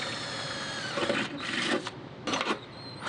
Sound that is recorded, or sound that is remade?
recorded